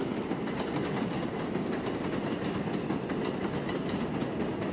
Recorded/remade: recorded